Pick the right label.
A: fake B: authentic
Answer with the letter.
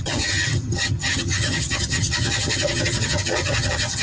A